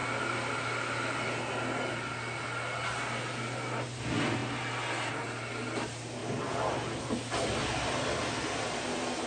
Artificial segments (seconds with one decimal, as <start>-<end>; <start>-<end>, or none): none